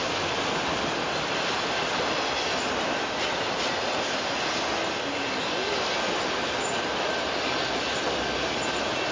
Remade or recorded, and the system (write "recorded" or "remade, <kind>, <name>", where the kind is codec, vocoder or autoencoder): recorded